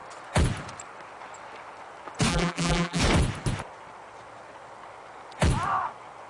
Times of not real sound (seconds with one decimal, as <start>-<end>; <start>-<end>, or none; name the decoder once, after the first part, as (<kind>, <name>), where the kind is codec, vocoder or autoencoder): 2.3-3.0 (vocoder, BigVGAN v2)